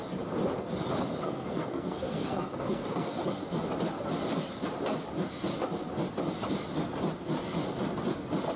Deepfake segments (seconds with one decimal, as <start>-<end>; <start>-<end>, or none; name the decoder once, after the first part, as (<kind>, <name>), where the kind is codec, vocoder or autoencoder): 1.2-3.2 (codec, SNAC)